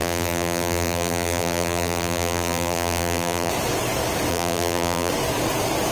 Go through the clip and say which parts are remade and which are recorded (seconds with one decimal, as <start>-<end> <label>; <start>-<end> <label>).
0.0-3.5 remade; 3.5-4.3 recorded; 4.3-5.1 remade; 5.1-5.9 recorded